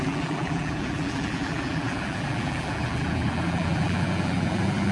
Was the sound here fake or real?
fake